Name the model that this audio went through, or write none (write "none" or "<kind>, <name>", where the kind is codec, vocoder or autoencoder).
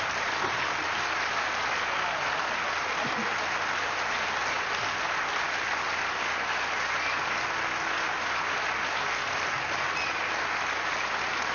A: none